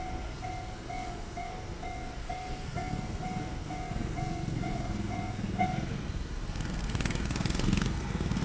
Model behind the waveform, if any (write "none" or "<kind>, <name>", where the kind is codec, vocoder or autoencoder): codec, SNAC